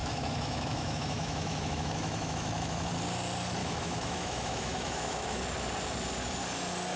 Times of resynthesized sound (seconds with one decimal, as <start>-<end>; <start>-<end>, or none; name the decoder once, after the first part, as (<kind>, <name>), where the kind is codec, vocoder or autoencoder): 0.0-2.9 (autoencoder, DAC-VAE); 3.6-5.4